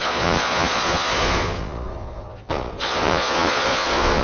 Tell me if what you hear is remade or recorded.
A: remade